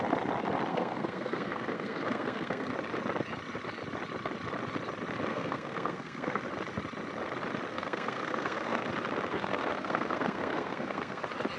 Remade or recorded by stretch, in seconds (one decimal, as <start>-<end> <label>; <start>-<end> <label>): 0.0-0.7 recorded; 0.7-2.7 remade; 2.7-5.3 recorded; 5.3-6.4 remade; 6.4-7.7 recorded; 7.7-8.9 remade; 8.9-9.3 recorded; 9.3-11.2 remade; 11.2-11.6 recorded